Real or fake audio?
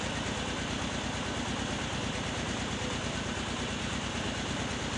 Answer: real